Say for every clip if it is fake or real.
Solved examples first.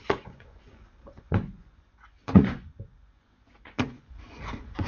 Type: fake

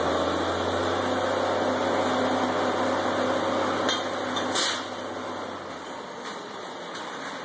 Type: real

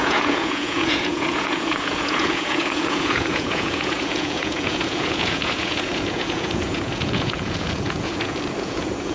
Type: fake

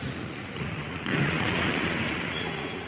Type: fake